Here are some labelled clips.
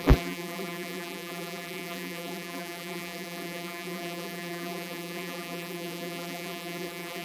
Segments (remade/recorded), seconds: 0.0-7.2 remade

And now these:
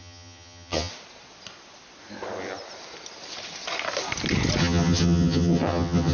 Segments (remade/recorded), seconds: 0.0-0.9 remade; 0.9-4.6 recorded; 4.6-6.1 remade

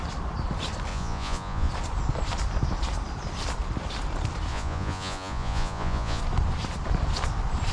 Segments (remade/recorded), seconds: 0.0-0.9 recorded; 0.9-1.7 remade; 1.7-4.5 recorded; 4.5-6.2 remade; 6.2-7.7 recorded

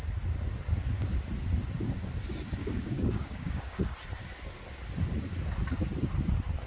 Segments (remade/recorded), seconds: 0.0-2.6 recorded; 2.6-3.8 remade; 3.8-6.7 recorded

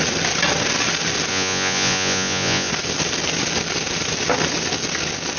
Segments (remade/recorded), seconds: 0.0-1.3 recorded; 1.3-2.7 remade; 2.7-5.4 recorded

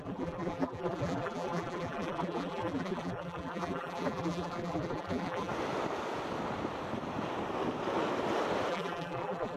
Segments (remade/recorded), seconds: 0.0-5.5 remade; 5.5-8.7 recorded; 8.7-9.6 remade